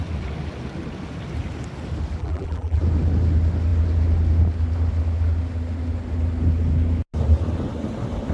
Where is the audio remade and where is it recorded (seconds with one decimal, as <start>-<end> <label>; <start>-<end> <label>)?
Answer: 0.0-2.2 recorded; 2.2-2.8 remade; 2.8-8.3 recorded